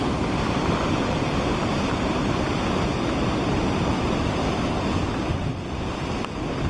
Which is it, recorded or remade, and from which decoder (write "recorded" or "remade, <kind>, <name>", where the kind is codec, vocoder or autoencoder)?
recorded